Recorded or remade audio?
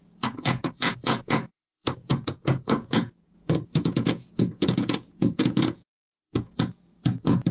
remade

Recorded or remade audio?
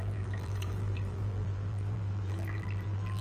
remade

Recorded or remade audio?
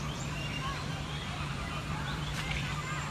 remade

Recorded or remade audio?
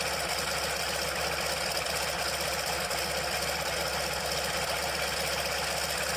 recorded